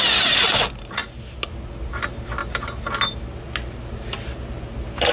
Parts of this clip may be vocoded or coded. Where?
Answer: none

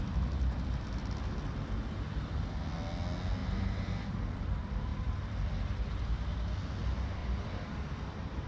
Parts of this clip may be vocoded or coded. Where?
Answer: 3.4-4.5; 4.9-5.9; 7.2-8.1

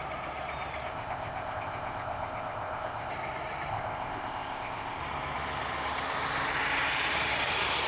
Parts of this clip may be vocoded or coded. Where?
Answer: 0.9-3.1; 3.7-5.0